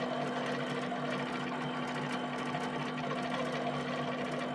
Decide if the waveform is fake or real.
real